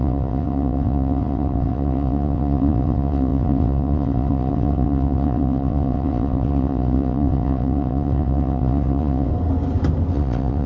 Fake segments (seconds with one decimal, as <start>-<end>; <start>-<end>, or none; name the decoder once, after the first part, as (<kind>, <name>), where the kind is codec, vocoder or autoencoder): 0.0-9.3 (vocoder, WaveNeXt); 10.1-10.7